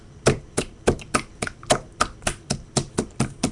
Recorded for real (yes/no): no